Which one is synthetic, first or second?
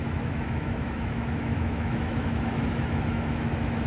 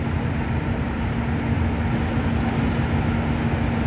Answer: first